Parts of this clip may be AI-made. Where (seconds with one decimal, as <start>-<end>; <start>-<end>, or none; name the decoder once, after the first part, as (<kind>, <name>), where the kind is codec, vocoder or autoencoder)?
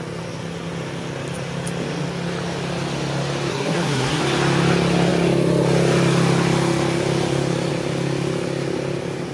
3.5-4.2 (codec, SNAC)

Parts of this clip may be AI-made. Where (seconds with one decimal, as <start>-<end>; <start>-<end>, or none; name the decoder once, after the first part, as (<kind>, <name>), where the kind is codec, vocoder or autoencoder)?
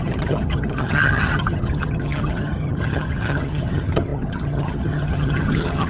0.0-5.9 (vocoder, HiFi-GAN)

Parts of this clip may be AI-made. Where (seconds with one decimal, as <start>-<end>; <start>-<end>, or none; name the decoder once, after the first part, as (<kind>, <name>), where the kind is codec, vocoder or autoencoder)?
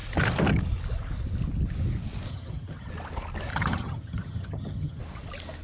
2.3-2.9 (vocoder, HiFi-GAN); 3.5-5.0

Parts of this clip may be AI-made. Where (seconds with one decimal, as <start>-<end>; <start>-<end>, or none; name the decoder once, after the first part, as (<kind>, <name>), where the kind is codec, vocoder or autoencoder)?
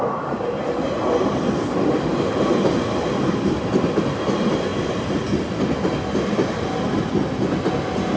none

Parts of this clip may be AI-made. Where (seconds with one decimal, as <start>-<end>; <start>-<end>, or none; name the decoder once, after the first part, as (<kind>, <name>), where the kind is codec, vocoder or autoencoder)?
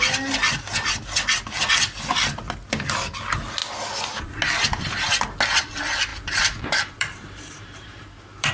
6.1-8.5 (vocoder, BigVGAN v2)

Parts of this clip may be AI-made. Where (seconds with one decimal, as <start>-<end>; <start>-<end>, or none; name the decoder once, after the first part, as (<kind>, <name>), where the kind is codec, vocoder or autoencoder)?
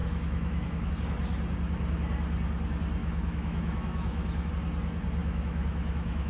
0.0-0.9 (autoencoder, DAC-VAE); 3.0-4.5; 5.2-6.3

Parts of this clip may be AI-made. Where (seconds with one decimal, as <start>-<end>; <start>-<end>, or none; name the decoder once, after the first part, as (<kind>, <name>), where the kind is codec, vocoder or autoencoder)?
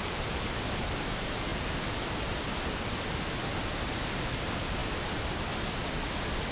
none